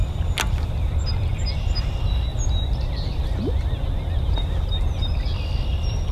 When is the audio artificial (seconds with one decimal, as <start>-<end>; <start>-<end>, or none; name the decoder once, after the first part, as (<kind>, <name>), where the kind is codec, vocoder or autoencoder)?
none